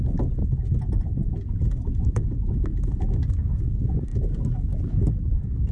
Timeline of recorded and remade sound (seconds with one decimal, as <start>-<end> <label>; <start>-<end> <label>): 0.0-5.7 recorded